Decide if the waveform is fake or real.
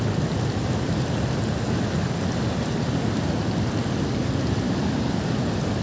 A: real